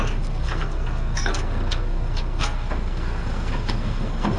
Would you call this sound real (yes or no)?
no